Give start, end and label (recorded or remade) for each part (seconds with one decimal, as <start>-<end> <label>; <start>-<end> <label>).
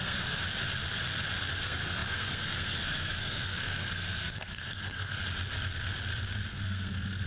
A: 0.0-0.4 remade; 0.4-1.6 recorded; 1.6-5.2 remade; 5.2-6.5 recorded; 6.5-7.3 remade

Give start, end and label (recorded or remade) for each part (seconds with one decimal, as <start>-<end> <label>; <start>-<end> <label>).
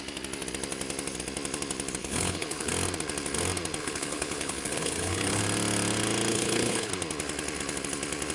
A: 0.0-2.0 recorded; 2.0-2.7 remade; 2.7-3.8 recorded; 3.8-5.4 remade; 5.4-6.3 recorded; 6.3-6.9 remade; 6.9-8.3 recorded